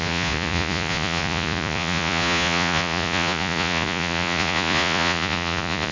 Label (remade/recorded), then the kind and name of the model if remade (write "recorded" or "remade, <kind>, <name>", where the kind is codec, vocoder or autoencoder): remade, vocoder, Vocos